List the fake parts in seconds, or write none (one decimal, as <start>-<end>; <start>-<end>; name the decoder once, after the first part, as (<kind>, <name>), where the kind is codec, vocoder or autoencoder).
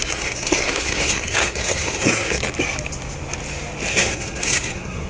0.0-2.4 (codec, SNAC); 3.9-5.1